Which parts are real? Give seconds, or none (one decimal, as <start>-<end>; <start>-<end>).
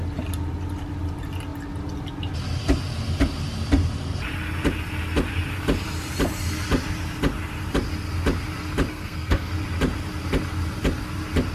0.0-8.9; 9.5-11.5